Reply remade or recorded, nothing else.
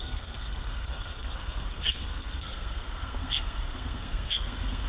remade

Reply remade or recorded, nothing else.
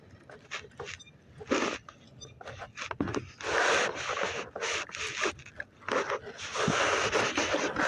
recorded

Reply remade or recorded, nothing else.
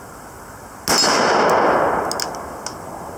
recorded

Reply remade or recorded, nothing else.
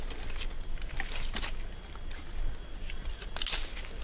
recorded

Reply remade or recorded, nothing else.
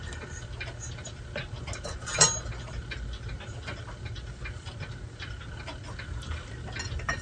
recorded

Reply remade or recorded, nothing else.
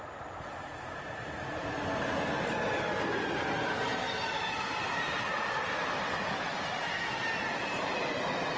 recorded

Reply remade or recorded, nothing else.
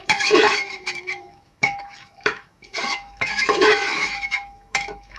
remade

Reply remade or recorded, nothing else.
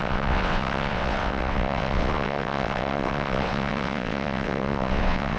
remade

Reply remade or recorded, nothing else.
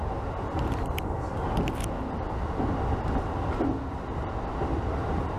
recorded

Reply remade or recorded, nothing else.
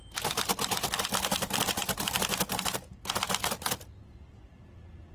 recorded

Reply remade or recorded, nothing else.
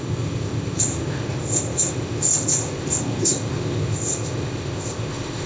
remade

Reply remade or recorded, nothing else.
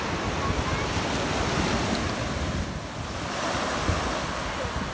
recorded